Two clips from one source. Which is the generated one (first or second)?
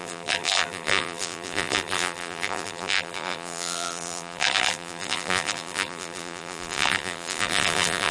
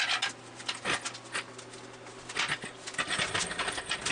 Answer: first